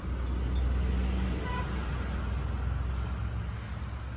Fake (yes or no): no